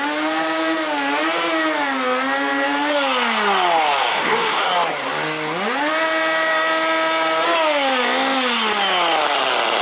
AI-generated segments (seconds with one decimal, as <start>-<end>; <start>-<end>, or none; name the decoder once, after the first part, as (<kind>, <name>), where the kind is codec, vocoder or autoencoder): 4.1-4.7 (autoencoder, DAC-VAE)